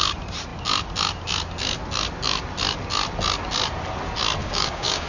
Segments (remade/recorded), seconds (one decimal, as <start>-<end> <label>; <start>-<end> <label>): 0.0-4.4 recorded; 4.4-5.1 remade